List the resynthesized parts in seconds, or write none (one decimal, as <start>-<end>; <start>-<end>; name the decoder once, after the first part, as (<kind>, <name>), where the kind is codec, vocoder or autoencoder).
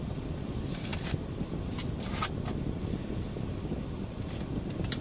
none